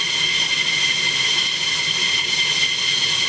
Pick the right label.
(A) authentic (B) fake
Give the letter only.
A